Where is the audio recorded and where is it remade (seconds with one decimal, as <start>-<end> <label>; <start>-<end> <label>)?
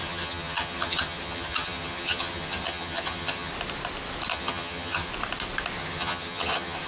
0.0-3.5 remade; 3.5-4.3 recorded; 4.3-5.1 remade; 5.1-5.8 recorded; 5.8-6.9 remade